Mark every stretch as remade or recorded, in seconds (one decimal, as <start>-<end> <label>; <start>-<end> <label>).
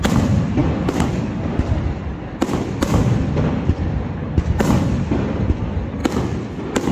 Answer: 0.0-6.9 recorded